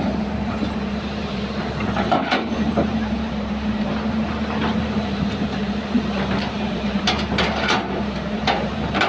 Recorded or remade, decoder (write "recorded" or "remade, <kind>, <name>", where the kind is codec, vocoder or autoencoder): remade, vocoder, BigVGAN v2